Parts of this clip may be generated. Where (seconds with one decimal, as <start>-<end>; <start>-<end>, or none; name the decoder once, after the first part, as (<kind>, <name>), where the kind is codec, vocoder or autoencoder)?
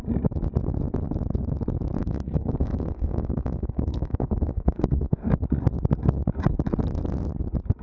2.0-5.3 (codec, SNAC)